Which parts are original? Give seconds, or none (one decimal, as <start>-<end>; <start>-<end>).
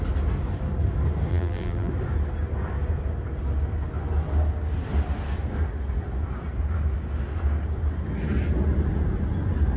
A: 0.0-1.3; 1.9-9.8